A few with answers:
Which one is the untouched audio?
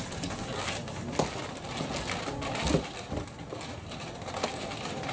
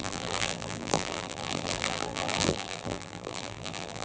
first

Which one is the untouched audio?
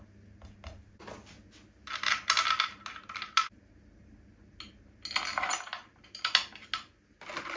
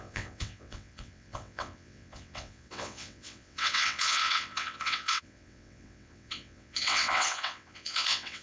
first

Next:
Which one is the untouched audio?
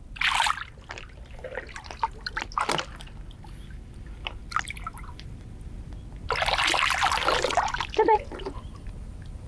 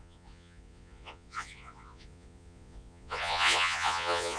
first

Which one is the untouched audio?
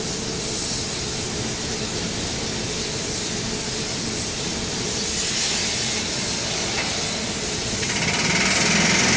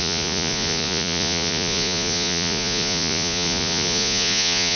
first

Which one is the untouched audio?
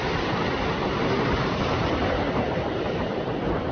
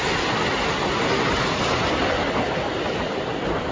second